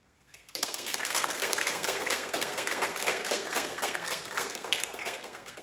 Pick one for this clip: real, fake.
fake